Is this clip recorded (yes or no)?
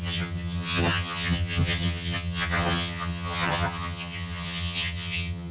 no